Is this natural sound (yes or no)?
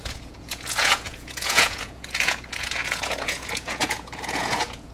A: no